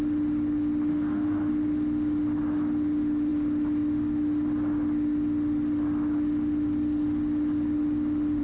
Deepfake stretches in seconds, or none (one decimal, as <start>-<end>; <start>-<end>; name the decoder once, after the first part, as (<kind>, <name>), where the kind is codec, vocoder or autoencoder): 0.9-1.5 (codec, SNAC)